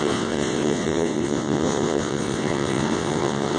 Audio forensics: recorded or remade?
remade